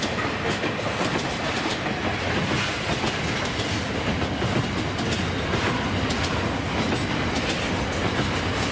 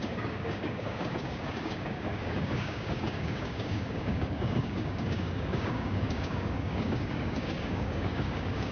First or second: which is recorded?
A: first